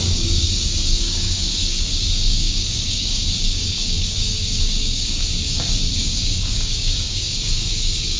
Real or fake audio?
fake